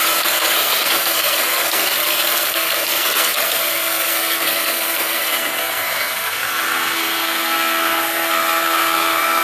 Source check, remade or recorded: remade